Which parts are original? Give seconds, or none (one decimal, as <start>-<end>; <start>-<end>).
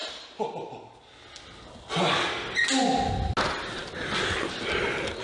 0.0-5.2